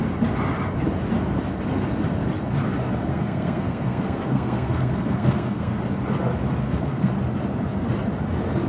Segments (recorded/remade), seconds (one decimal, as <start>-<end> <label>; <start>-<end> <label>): 0.0-3.1 recorded; 3.1-5.7 remade; 5.7-6.6 recorded; 6.6-7.1 remade; 7.1-8.7 recorded